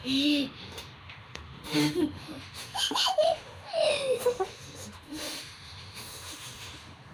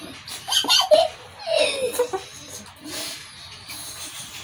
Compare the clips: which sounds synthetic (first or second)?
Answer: first